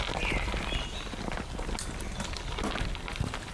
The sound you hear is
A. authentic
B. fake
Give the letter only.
A